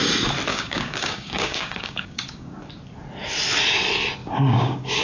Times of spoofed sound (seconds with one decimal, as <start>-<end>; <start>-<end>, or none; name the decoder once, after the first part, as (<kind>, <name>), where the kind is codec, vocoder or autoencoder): 0.5-2.6 (codec, DAC); 4.2-5.0